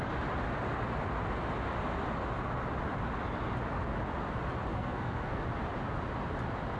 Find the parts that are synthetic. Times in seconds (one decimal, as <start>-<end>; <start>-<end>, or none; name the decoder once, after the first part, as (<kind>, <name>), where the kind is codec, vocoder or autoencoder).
4.7-5.4 (codec, SNAC)